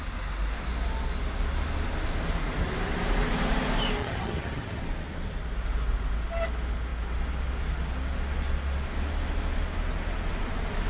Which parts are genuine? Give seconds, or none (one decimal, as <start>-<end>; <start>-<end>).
0.0-4.0; 4.8-10.9